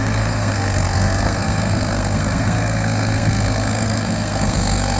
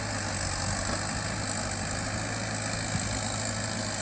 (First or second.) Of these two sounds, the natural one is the second